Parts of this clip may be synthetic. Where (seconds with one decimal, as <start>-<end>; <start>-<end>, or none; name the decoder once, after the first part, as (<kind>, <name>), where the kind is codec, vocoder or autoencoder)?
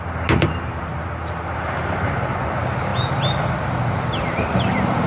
none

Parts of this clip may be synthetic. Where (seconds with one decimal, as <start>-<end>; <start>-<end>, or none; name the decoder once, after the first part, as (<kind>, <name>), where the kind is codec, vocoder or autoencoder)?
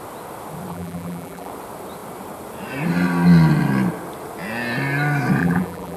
0.7-1.5 (vocoder, BigVGAN v2); 5.4-6.0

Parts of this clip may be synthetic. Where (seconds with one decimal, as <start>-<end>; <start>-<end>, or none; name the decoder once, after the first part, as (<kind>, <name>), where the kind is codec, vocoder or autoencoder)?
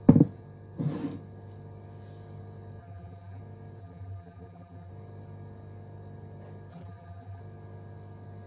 2.8-3.4 (vocoder, BigVGAN v2); 3.8-4.9; 6.7-7.4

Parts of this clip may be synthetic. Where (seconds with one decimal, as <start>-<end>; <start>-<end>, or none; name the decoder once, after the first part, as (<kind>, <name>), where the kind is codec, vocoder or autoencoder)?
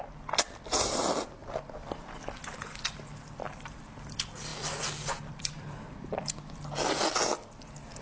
1.4-3.8 (vocoder, BigVGAN v2); 4.5-6.3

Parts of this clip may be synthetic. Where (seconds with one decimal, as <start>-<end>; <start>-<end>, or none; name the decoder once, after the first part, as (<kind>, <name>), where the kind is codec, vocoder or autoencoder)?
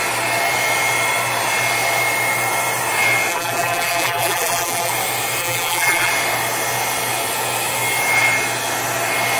3.3-4.9 (vocoder, BigVGAN v2); 5.4-6.1